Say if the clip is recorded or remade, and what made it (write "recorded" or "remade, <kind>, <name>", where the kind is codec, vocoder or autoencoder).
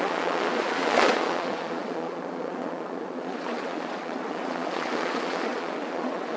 remade, vocoder, Vocos